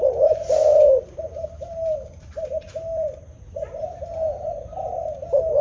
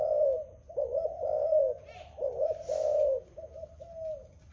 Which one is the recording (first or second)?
second